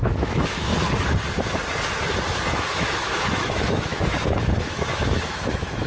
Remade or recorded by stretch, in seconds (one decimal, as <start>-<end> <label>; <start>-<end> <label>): 0.0-0.7 remade; 0.7-2.5 recorded; 2.5-5.9 remade